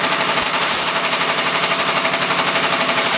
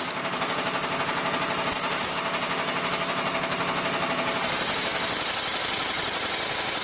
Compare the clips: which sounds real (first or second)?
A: second